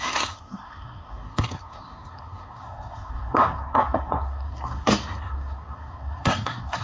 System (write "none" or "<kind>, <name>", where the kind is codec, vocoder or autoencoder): codec, SNAC